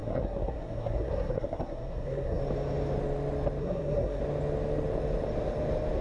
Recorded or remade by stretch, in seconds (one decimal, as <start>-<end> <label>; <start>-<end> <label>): 0.0-2.4 remade; 2.4-3.6 recorded; 3.6-4.2 remade; 4.2-6.0 recorded